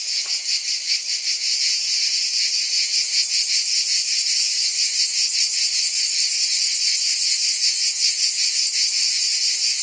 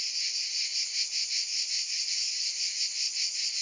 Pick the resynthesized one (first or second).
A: first